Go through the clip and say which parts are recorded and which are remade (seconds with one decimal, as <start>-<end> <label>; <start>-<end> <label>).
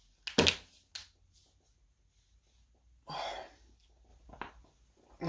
0.0-5.3 recorded